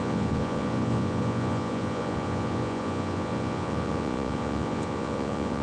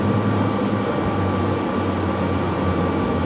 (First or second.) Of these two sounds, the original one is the second